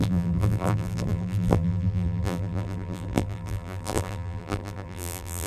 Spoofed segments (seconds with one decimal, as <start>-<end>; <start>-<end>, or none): 0.0-5.5